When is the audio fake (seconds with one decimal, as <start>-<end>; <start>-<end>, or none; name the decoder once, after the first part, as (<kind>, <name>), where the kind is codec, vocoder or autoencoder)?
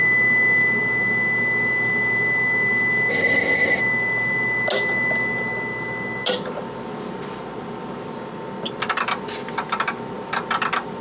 3.1-3.8 (codec, ZipCodec)